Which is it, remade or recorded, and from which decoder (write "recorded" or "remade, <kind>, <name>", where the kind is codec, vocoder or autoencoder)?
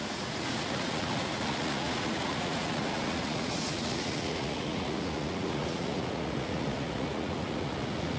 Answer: remade, vocoder, Vocos